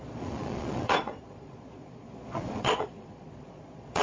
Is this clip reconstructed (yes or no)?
yes